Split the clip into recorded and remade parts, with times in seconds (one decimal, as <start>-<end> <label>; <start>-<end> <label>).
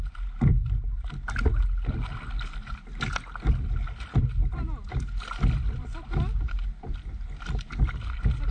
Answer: 0.0-8.5 recorded